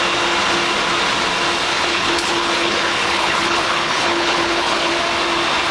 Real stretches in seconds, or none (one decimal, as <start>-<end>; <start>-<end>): 0.0-1.7; 4.9-5.7